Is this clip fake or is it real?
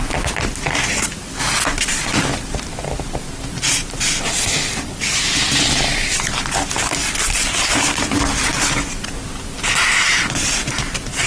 fake